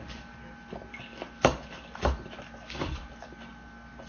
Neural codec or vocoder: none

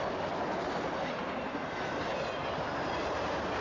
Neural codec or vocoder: none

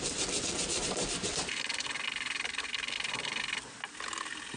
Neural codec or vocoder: none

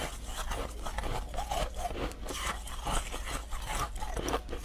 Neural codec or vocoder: none